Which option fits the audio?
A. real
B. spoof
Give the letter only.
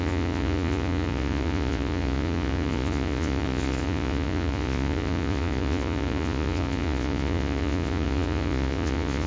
B